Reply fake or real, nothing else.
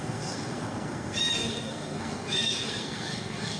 fake